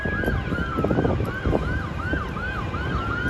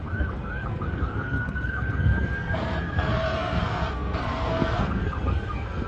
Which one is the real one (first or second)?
first